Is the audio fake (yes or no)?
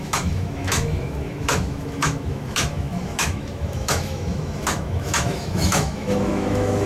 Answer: yes